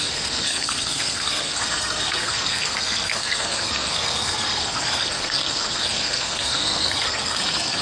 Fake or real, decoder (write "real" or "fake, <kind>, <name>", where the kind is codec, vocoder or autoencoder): fake, codec, SNAC